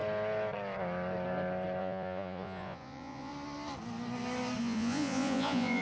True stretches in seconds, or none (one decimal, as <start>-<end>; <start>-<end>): 0.0-1.8; 3.3-4.6